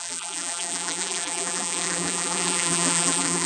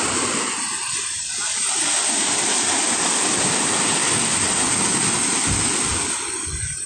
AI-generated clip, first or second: first